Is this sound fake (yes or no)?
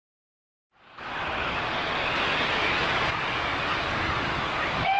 no